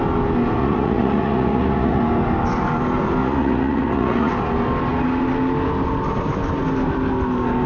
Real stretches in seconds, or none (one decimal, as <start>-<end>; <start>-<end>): 0.0-0.6; 2.0-3.2; 4.3-7.7